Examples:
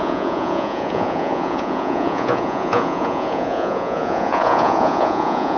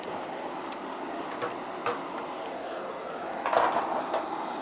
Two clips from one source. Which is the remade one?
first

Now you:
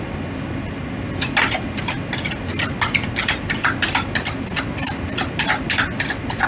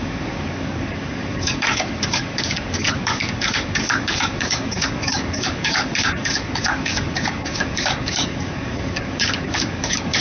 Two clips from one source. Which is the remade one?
second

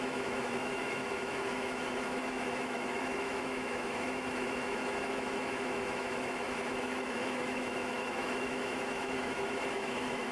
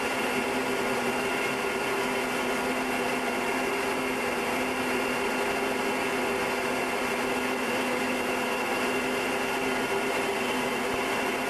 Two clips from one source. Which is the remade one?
first